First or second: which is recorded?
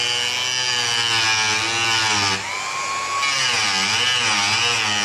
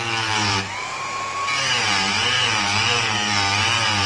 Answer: first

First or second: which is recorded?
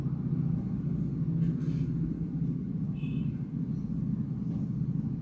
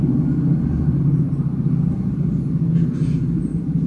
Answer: first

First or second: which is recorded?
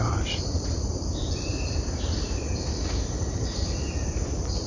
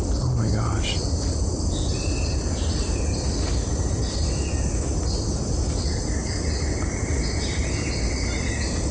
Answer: second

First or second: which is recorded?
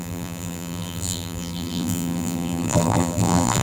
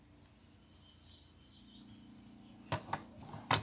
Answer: second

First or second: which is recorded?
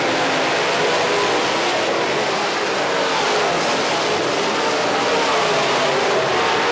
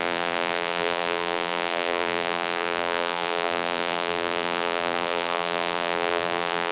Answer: first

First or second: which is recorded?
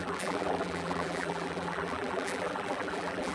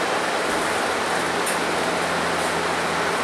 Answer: second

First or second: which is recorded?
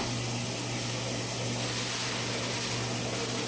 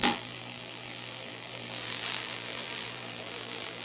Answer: first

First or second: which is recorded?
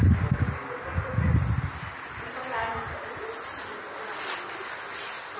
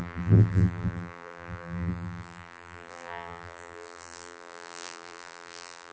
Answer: first